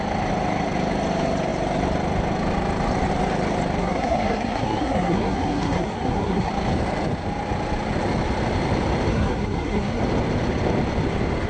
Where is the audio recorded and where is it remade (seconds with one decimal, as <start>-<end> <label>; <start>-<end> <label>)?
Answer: 0.0-3.8 recorded; 3.8-6.5 remade; 6.5-9.1 recorded; 9.1-10.0 remade; 10.0-11.5 recorded